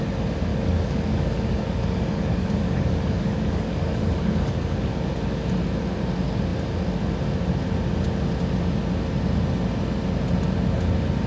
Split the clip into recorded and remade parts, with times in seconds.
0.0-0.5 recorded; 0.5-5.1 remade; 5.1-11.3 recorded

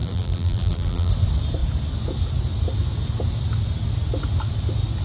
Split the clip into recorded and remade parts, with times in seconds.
0.0-1.1 remade; 1.1-5.0 recorded

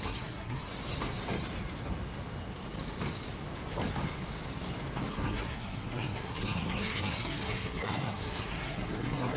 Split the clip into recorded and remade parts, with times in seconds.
0.0-0.7 remade; 0.7-5.1 recorded; 5.1-9.4 remade

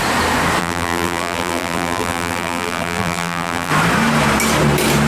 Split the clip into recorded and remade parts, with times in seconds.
0.0-0.6 recorded; 0.6-3.7 remade; 3.7-5.1 recorded

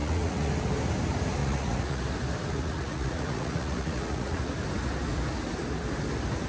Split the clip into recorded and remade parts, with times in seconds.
0.0-0.5 remade; 0.5-1.4 recorded; 1.4-2.0 remade; 2.0-2.5 recorded; 2.5-4.5 remade; 4.5-6.5 recorded

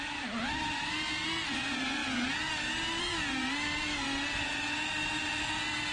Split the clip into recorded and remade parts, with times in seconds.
0.0-5.9 recorded

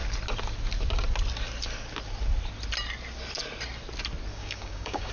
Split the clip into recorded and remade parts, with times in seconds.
0.0-4.3 recorded; 4.3-5.1 remade

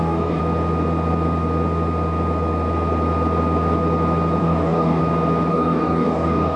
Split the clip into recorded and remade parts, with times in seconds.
0.0-0.4 remade; 0.4-4.4 recorded; 4.4-5.0 remade; 5.0-5.5 recorded; 5.5-6.6 remade